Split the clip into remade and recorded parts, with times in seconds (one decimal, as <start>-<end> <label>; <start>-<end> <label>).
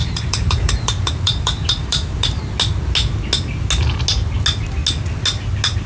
0.0-2.4 remade; 2.4-5.9 recorded